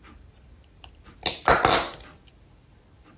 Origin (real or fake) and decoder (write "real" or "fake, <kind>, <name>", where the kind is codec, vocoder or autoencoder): real